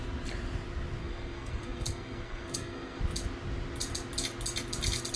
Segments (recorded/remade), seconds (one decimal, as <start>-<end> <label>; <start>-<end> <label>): 0.0-1.0 recorded; 1.0-3.0 remade; 3.0-5.2 recorded

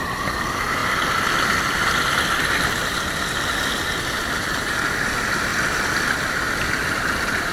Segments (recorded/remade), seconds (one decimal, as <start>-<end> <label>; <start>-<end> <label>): 0.0-7.5 recorded

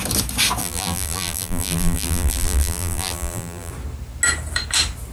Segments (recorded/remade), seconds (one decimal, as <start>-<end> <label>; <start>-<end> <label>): 0.0-0.6 recorded; 0.6-3.7 remade; 3.7-5.1 recorded

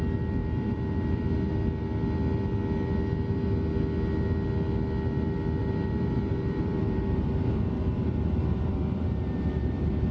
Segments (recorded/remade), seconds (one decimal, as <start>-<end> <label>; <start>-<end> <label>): 0.0-0.4 recorded; 0.4-1.3 remade; 1.3-5.6 recorded; 5.6-10.1 remade